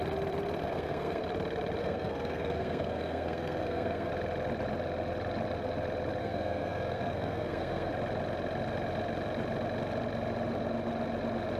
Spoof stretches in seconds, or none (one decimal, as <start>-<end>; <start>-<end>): 0.6-1.2; 1.8-4.1; 6.2-7.9